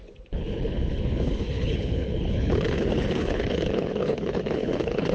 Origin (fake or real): fake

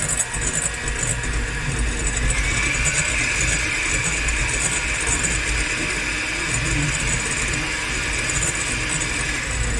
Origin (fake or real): real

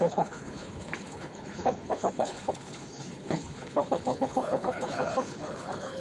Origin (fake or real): fake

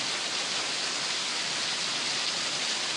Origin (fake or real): real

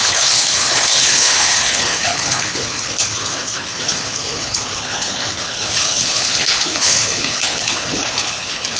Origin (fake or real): fake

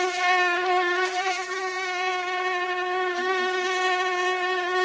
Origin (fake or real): real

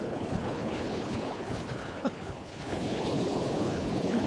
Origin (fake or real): fake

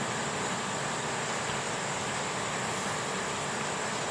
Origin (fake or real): real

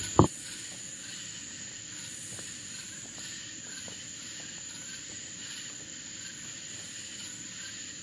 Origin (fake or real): real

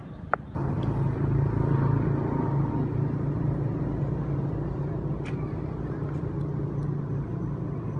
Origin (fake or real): real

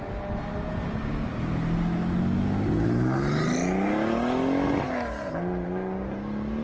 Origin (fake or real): real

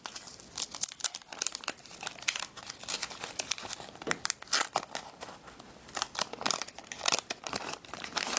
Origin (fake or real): real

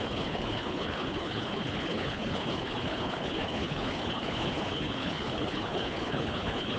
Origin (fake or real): fake